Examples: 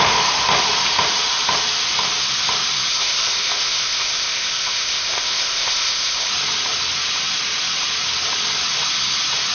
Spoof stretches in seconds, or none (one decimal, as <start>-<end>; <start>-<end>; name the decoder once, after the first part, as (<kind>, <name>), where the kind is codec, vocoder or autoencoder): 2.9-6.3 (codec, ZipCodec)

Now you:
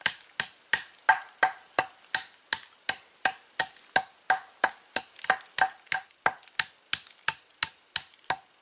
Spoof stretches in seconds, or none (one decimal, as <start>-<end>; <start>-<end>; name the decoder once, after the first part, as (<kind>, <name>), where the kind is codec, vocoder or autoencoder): none

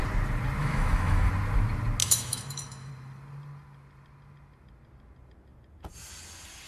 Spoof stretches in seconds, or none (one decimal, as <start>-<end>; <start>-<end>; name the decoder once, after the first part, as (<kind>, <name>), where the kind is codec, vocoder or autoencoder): 0.6-1.3 (autoencoder, DAC-VAE); 2.0-2.9

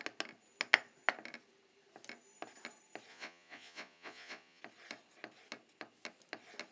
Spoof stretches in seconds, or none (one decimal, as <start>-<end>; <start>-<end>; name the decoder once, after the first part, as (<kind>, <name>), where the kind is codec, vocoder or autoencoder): 3.1-4.6 (vocoder, Vocos)

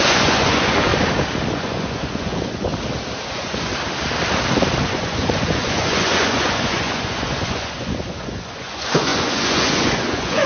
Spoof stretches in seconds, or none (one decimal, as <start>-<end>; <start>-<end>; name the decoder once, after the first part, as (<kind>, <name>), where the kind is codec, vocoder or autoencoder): 0.0-0.9 (vocoder, Vocos); 1.5-2.7; 3.3-3.7; 4.8-10.5

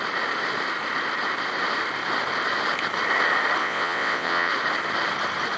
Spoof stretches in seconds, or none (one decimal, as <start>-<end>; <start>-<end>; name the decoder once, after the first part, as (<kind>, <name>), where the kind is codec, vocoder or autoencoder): 3.6-4.5 (vocoder, WaveNeXt)

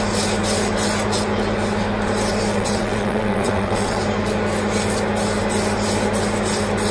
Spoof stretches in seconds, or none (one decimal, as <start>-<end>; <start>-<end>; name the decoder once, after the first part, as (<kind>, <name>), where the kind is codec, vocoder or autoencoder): 2.5-4.0 (vocoder, WaveNeXt)